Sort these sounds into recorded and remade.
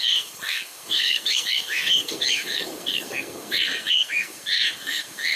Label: remade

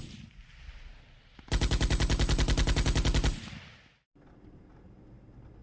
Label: recorded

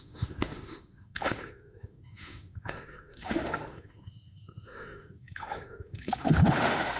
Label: remade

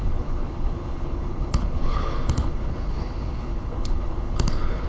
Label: remade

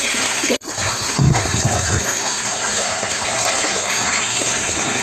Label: remade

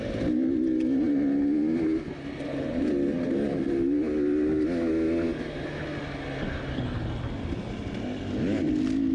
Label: recorded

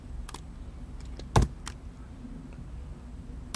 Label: recorded